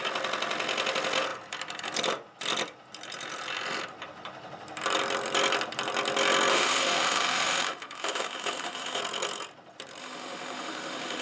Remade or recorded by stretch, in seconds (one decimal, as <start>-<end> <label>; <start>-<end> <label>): 0.0-6.5 recorded; 6.5-9.0 remade; 9.0-10.0 recorded; 10.0-11.2 remade